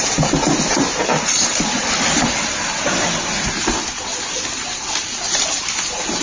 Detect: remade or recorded recorded